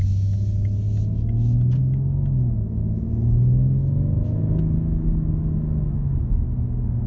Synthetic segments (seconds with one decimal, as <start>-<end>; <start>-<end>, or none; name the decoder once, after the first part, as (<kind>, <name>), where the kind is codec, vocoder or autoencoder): 1.8-6.1 (autoencoder, DAC-VAE)